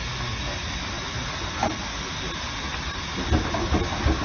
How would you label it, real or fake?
real